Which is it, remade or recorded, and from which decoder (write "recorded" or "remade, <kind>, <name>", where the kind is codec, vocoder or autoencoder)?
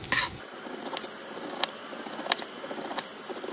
recorded